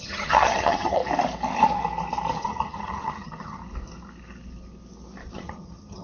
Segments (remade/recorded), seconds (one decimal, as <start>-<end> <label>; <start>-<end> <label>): 0.0-1.0 remade; 1.0-2.4 recorded; 2.4-3.6 remade; 3.6-5.3 recorded; 5.3-6.0 remade